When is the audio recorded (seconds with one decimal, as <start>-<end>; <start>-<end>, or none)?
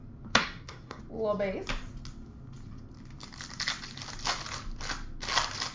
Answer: 0.0-0.4; 1.0-5.7